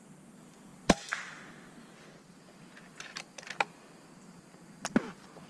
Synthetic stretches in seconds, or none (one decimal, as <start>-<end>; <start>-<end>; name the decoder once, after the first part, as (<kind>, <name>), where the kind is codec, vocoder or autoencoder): none